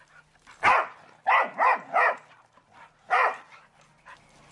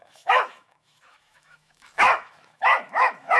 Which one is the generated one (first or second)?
second